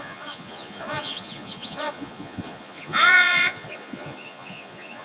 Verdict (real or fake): fake